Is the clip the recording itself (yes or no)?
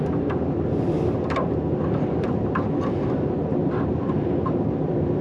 yes